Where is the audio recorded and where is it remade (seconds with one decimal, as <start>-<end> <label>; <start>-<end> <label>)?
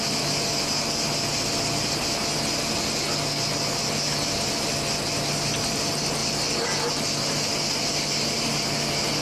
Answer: 0.0-9.2 recorded